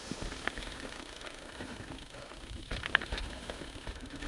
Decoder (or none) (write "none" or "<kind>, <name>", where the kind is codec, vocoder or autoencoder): autoencoder, DAC-VAE